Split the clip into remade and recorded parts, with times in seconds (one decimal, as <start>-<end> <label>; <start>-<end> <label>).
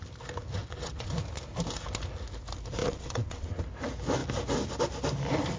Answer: 0.0-0.6 recorded; 0.6-1.1 remade; 1.1-2.8 recorded; 2.8-3.6 remade; 3.6-5.6 recorded